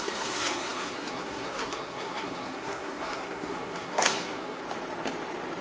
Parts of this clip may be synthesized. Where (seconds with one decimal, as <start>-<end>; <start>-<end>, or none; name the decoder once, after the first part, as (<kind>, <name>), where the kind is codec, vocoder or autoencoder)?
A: 0.0-4.6 (codec, SNAC)